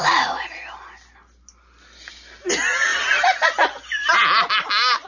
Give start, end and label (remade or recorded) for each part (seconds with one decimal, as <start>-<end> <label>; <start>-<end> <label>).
0.0-5.1 recorded